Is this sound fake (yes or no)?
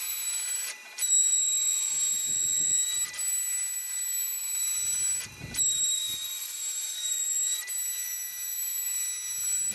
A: yes